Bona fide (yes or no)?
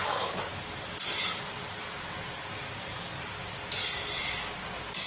yes